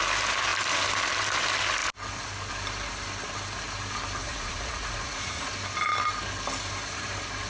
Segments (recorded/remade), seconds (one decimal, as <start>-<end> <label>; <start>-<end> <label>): 0.0-4.2 recorded; 4.2-5.5 remade; 5.5-7.5 recorded